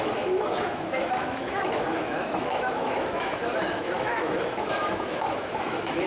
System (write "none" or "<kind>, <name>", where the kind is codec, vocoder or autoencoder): autoencoder, DAC-VAE